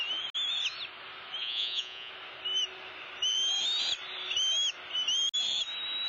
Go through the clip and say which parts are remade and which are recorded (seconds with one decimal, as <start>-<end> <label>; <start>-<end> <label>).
0.0-1.4 recorded; 1.4-2.1 remade; 2.1-6.1 recorded